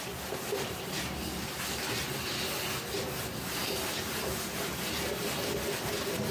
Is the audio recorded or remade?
recorded